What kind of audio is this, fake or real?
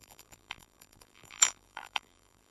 fake